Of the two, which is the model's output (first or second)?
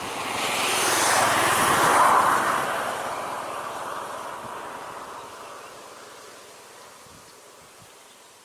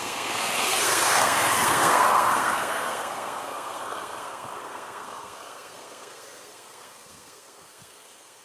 second